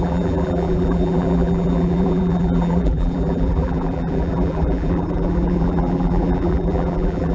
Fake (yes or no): yes